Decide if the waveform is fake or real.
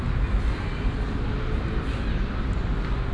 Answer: real